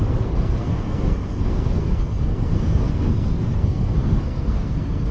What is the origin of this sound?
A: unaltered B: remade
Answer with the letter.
B